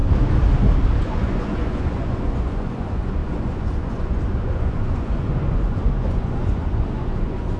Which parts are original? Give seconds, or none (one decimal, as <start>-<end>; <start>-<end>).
0.0-1.0